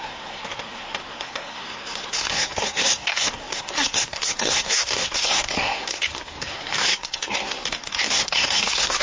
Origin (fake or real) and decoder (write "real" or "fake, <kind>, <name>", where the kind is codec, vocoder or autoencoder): fake, codec, SNAC